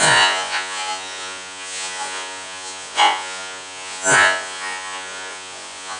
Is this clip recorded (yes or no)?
no